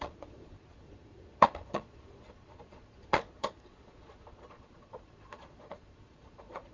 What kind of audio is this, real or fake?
fake